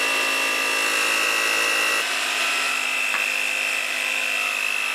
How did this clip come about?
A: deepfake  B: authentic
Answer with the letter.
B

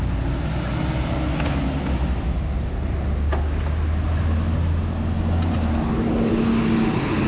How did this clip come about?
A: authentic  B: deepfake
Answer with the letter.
A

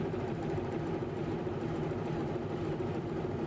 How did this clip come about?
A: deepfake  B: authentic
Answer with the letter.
A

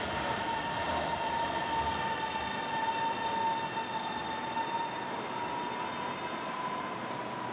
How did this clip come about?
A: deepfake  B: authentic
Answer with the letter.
B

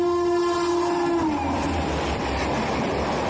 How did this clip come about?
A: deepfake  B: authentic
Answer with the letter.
B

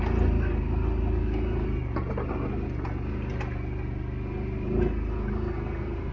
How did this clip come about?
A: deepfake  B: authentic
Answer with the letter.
B